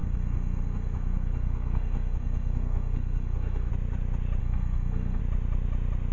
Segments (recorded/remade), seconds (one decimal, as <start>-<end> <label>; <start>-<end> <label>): 0.0-3.7 remade; 3.7-4.4 recorded; 4.4-5.2 remade; 5.2-6.1 recorded